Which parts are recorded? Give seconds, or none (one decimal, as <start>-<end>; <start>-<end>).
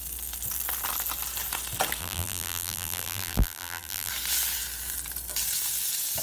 0.0-2.0; 4.1-6.2